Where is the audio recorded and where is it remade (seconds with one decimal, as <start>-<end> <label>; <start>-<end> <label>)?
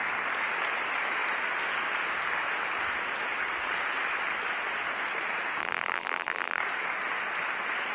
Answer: 0.0-5.6 recorded; 5.6-6.6 remade; 6.6-7.9 recorded